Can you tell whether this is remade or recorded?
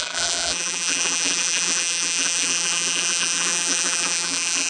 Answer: remade